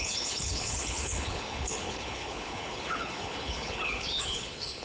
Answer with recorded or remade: remade